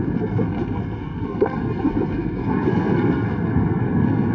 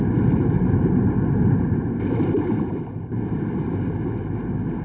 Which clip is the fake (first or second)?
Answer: first